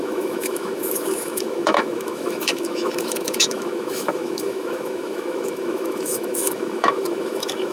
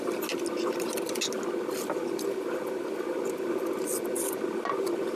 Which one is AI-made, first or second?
first